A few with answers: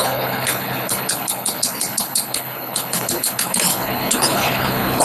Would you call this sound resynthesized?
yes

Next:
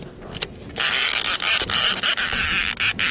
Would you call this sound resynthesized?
no